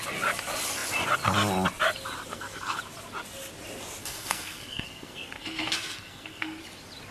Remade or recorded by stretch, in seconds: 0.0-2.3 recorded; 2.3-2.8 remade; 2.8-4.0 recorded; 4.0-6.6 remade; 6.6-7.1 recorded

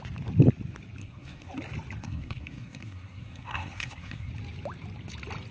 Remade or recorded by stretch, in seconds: 0.0-1.0 recorded; 1.0-1.5 remade; 1.5-2.0 recorded; 2.0-4.3 remade; 4.3-5.5 recorded

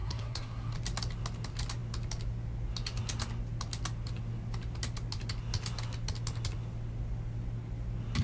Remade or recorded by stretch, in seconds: 0.0-0.7 remade; 0.7-8.2 recorded

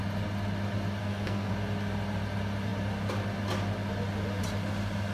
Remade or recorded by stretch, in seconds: 0.0-1.0 recorded; 1.0-1.5 remade; 1.5-5.1 recorded